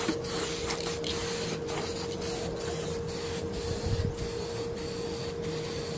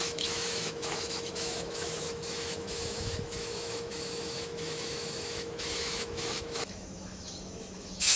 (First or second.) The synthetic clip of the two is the second